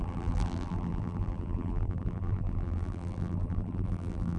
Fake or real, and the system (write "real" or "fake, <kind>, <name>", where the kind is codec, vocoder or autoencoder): fake, vocoder, BigVGAN v2